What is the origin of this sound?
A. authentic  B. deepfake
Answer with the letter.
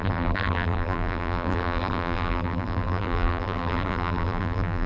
B